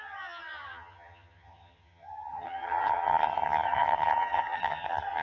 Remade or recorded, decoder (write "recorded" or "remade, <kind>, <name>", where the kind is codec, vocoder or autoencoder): remade, vocoder, HiFi-GAN